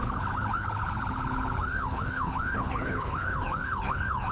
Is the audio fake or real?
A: fake